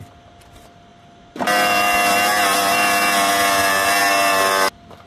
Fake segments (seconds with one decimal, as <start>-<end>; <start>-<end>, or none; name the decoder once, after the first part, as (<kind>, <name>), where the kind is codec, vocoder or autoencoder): none

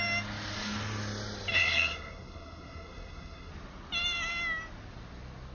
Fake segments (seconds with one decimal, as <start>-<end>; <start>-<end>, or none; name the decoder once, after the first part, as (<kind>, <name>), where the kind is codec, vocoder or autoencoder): 1.5-3.5 (codec, SNAC)

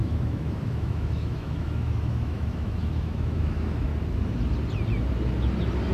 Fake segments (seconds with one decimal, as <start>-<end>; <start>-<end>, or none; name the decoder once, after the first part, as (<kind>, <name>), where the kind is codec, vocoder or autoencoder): 0.0-3.9 (autoencoder, DAC-VAE)